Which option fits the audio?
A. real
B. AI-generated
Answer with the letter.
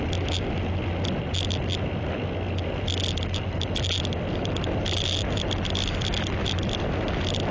A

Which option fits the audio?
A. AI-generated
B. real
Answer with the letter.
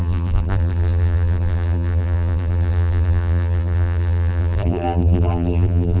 A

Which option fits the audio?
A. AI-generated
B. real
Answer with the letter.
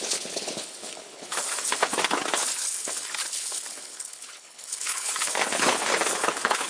A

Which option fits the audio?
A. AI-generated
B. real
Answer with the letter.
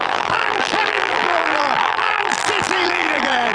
A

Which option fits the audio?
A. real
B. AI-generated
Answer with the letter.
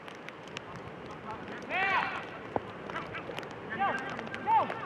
A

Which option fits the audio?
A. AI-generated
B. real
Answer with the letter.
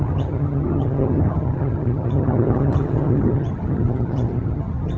A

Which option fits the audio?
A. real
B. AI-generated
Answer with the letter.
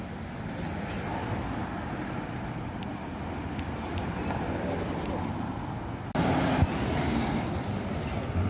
A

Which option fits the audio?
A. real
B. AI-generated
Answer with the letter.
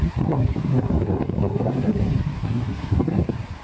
B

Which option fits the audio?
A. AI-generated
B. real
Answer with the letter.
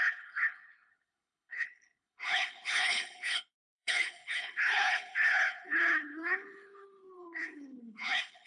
A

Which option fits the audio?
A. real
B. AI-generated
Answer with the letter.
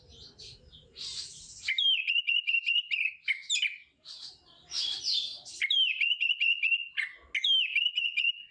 A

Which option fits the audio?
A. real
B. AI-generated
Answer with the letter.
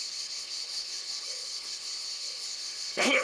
B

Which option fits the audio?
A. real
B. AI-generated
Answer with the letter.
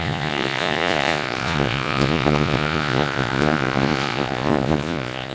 B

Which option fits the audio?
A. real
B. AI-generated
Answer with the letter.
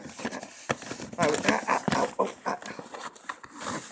A